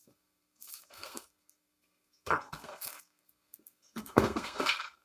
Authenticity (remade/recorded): remade